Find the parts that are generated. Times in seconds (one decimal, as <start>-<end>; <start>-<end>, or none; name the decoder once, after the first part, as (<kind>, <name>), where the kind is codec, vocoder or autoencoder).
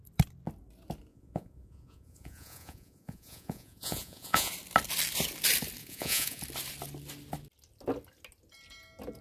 1.1-4.5 (vocoder, Vocos); 5.8-6.4